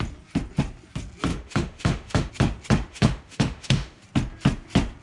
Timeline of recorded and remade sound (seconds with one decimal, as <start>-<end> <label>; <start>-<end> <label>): 0.0-1.3 recorded; 1.3-2.3 remade; 2.3-2.9 recorded; 2.9-4.0 remade; 4.0-5.0 recorded